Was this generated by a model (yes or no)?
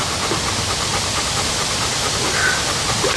yes